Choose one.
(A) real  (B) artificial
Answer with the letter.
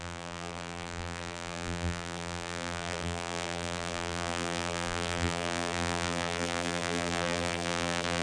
B